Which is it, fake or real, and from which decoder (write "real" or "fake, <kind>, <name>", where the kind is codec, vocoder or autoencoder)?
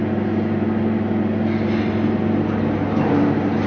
real